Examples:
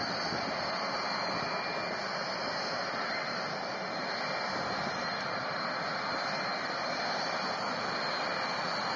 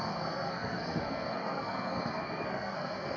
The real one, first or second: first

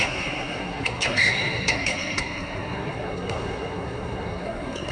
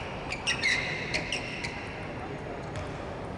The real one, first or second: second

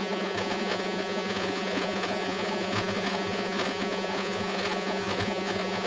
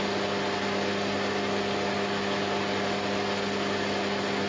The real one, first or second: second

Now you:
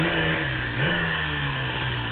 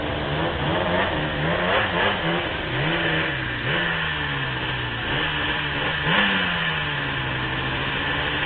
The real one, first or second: second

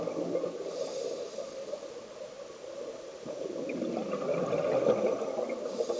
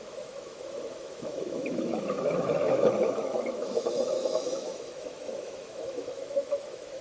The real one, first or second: first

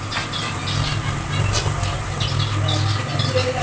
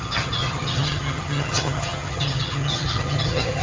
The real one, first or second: first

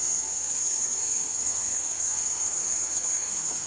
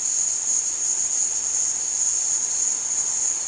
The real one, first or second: second